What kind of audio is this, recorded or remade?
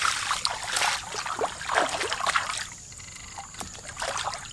recorded